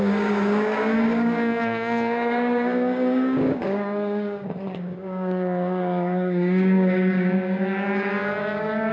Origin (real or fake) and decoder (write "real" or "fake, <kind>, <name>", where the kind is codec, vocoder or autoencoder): fake, codec, DAC